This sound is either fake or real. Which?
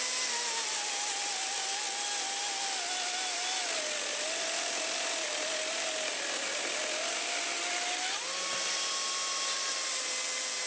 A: real